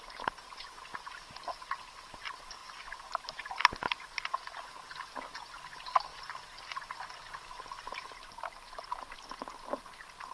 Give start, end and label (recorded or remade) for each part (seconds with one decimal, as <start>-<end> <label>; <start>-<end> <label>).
0.0-10.3 recorded